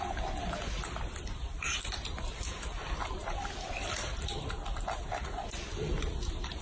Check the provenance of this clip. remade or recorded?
remade